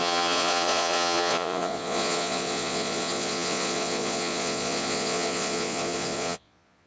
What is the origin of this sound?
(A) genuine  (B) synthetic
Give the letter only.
B